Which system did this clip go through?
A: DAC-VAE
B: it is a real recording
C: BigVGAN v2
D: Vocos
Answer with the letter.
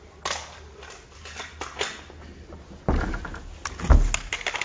B